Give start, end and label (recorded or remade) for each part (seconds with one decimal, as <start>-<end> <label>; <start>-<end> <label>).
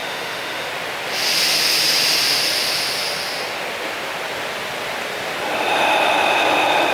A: 0.0-0.7 remade; 0.7-6.9 recorded